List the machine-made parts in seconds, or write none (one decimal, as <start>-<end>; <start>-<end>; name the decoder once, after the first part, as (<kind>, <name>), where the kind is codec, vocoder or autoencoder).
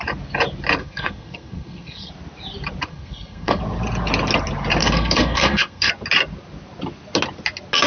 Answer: 0.8-2.1 (codec, SNAC); 2.9-3.6; 4.8-5.9